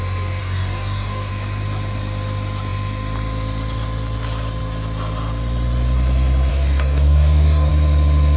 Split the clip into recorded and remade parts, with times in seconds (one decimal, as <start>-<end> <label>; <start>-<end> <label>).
0.0-0.4 recorded; 0.4-1.3 remade; 1.3-6.5 recorded; 6.5-7.7 remade; 7.7-8.4 recorded